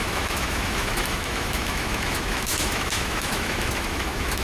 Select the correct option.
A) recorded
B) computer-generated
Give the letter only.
B